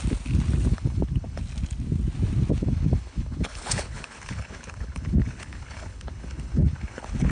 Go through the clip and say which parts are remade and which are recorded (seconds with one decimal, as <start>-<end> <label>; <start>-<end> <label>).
0.0-0.7 recorded; 0.7-1.4 remade; 1.4-2.6 recorded; 2.6-7.3 remade